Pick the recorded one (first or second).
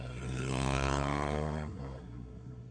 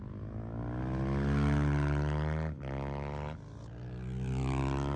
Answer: second